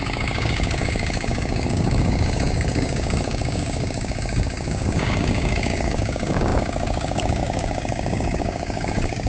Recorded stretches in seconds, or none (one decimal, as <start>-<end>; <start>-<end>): none